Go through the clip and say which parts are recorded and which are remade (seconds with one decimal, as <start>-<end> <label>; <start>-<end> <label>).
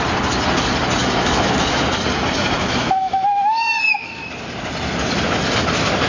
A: 0.0-1.0 recorded; 1.0-1.8 remade; 1.8-2.6 recorded; 2.6-4.3 remade; 4.3-6.1 recorded